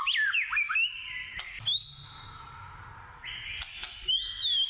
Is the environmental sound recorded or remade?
recorded